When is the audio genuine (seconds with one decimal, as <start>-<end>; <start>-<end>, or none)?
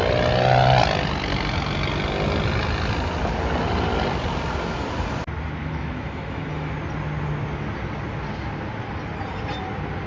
0.0-5.6; 6.7-10.1